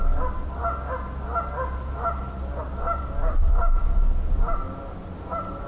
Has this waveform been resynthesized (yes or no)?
no